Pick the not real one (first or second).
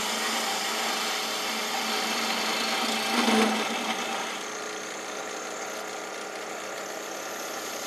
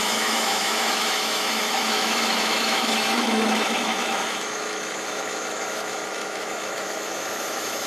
second